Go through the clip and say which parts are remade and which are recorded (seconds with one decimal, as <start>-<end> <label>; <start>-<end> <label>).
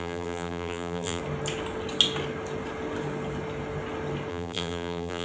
0.0-1.2 remade; 1.2-4.3 recorded; 4.3-5.2 remade